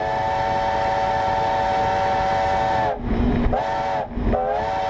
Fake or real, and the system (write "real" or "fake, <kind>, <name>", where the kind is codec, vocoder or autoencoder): real